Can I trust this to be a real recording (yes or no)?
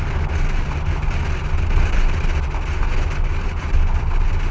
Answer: yes